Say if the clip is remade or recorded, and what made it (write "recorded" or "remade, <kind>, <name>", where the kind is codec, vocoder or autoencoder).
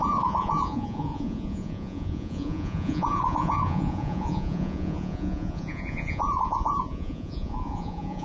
remade, vocoder, Vocos